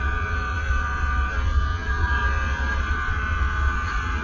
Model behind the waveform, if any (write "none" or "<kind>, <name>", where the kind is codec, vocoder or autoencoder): vocoder, Vocos